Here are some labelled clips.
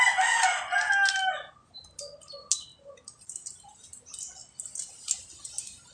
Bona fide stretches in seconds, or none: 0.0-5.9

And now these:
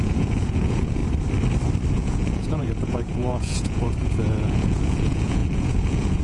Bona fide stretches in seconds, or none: 1.0-1.9